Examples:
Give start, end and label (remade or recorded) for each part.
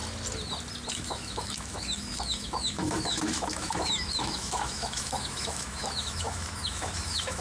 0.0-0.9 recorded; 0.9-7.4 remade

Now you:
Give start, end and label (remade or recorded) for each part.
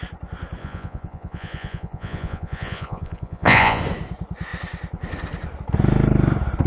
0.0-0.6 recorded; 0.6-3.8 remade; 3.8-6.7 recorded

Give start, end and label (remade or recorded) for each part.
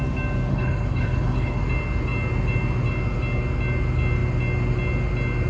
0.0-0.5 recorded; 0.5-1.6 remade; 1.6-5.5 recorded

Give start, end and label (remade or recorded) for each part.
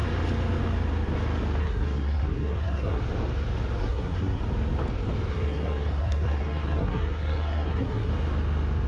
0.0-1.6 recorded; 1.6-3.0 remade; 3.0-3.8 recorded; 3.8-4.4 remade; 4.4-5.3 recorded; 5.3-8.1 remade; 8.1-8.9 recorded